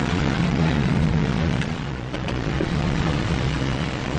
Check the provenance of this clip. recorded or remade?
remade